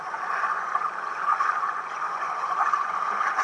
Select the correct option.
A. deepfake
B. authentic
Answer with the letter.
A